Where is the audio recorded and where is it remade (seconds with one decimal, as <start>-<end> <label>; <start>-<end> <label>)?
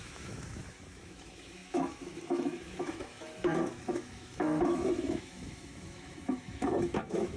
0.0-7.4 remade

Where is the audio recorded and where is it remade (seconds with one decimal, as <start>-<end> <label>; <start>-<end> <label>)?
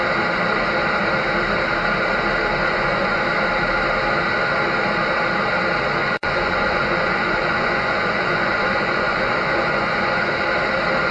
0.0-2.6 recorded; 2.6-3.2 remade; 3.2-6.0 recorded; 6.0-10.3 remade; 10.3-11.1 recorded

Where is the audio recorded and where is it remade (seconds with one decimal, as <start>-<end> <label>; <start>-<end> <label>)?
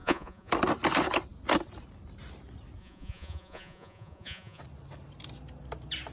0.0-0.5 remade; 0.5-2.8 recorded; 2.8-4.6 remade; 4.6-6.1 recorded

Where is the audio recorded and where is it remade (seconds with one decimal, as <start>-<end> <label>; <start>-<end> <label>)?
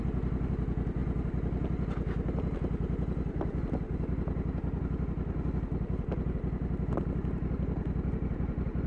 0.0-8.9 recorded